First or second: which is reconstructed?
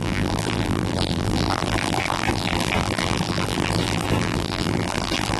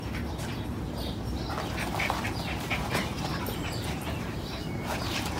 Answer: first